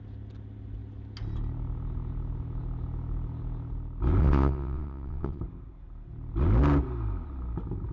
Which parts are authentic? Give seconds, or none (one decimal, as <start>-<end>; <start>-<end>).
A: 0.0-4.2; 5.4-7.9